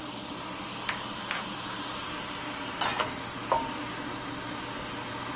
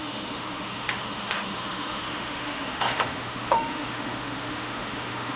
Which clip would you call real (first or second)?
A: first